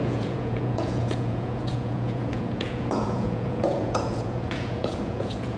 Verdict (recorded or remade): remade